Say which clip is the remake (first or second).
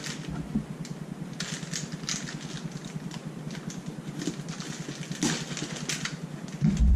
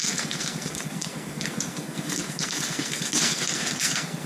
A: second